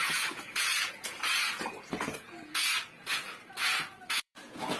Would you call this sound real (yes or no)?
no